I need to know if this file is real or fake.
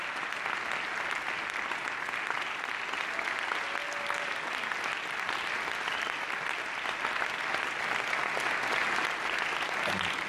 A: real